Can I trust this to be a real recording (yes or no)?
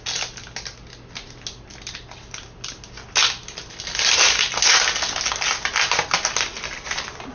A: yes